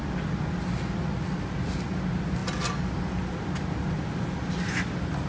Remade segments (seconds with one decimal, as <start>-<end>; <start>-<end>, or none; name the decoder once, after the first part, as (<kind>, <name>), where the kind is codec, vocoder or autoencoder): none